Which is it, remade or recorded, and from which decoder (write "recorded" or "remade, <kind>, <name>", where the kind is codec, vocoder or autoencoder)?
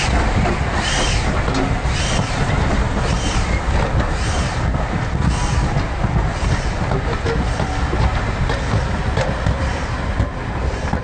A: recorded